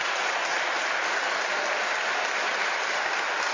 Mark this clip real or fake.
real